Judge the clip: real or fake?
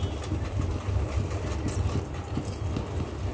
real